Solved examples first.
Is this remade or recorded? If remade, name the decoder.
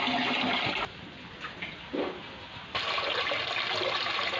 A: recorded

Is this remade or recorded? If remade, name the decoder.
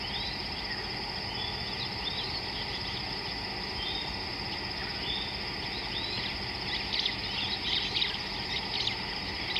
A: recorded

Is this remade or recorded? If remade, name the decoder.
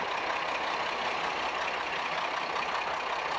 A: recorded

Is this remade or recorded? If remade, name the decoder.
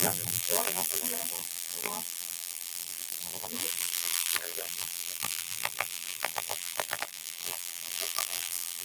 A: remade, vocoder, BigVGAN v2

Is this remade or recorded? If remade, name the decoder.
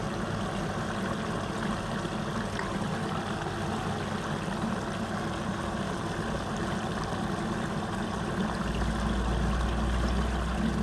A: recorded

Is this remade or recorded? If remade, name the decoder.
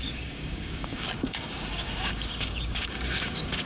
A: remade, codec, DAC